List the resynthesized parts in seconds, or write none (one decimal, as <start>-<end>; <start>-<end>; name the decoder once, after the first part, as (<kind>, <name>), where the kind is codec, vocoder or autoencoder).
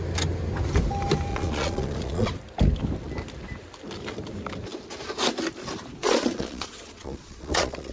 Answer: 1.3-2.3 (vocoder, Vocos); 6.0-7.9